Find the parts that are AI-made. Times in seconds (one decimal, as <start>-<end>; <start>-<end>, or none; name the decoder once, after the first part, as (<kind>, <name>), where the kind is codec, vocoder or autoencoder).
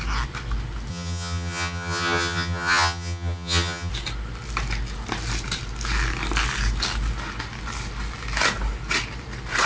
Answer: 0.9-3.9 (vocoder, HiFi-GAN)